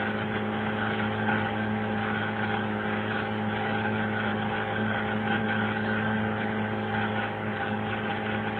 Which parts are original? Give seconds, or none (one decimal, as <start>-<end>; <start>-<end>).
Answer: 8.1-8.6